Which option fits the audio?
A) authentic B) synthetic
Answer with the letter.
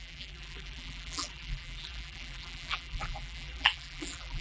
B